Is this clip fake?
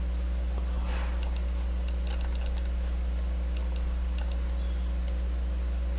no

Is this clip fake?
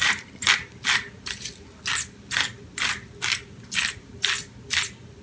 no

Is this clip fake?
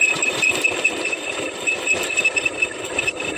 no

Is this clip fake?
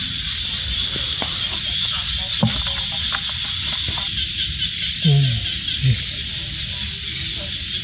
no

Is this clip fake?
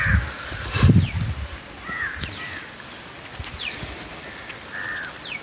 no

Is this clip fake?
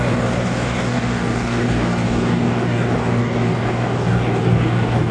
yes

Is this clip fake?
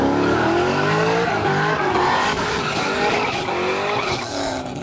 yes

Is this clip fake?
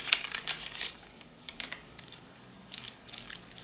yes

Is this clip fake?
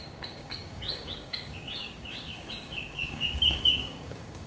yes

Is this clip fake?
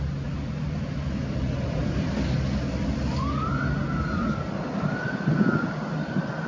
no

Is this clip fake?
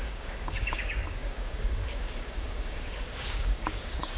yes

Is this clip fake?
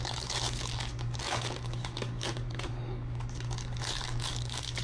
yes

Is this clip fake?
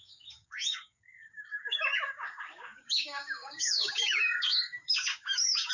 yes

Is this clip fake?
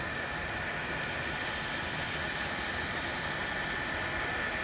no